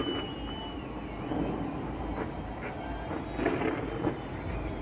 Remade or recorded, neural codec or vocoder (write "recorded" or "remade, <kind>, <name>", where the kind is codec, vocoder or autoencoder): recorded